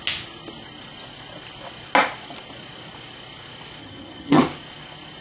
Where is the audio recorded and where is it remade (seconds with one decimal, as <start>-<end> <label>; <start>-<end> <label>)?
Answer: 0.0-3.8 recorded; 3.8-4.4 remade; 4.4-5.2 recorded